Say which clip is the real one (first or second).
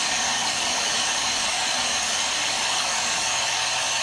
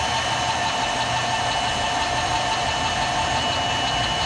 second